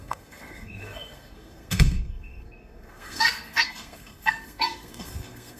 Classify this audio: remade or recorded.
remade